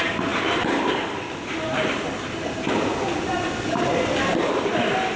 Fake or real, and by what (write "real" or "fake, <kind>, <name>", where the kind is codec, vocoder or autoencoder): real